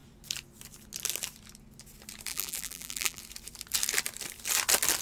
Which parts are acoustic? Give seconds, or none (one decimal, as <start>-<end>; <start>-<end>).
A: 0.0-2.3; 3.2-5.0